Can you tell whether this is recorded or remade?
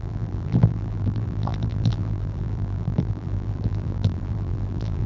remade